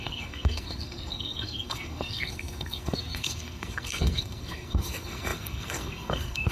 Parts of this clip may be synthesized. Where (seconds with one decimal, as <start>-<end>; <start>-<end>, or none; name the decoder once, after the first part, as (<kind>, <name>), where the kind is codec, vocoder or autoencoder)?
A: 0.0-6.5 (codec, SNAC)